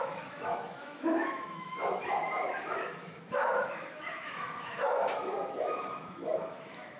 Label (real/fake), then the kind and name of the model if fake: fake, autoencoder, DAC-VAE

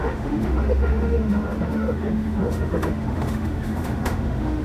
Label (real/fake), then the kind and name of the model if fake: fake, autoencoder, DAC-VAE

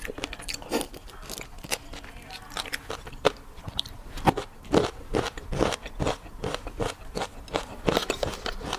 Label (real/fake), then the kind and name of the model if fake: real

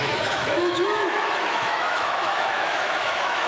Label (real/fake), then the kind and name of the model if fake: fake, autoencoder, DAC-VAE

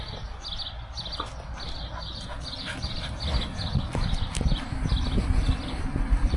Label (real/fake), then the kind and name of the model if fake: real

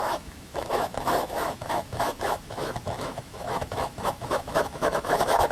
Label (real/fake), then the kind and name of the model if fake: fake, autoencoder, DAC-VAE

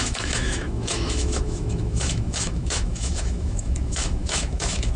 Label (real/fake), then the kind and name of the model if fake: fake, autoencoder, DAC-VAE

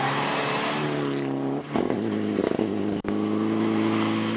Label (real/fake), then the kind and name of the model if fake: real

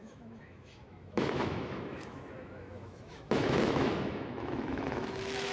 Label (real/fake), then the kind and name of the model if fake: fake, autoencoder, DAC-VAE